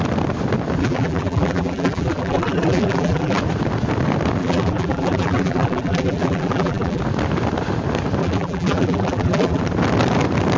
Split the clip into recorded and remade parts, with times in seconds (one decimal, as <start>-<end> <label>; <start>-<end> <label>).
0.0-0.8 recorded; 0.8-3.4 remade; 3.4-4.4 recorded; 4.4-7.0 remade; 7.0-8.2 recorded; 8.2-9.6 remade; 9.6-10.6 recorded